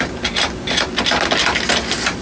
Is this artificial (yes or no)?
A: no